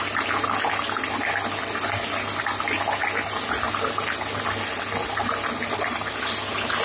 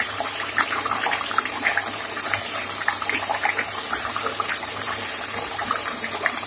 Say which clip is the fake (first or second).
second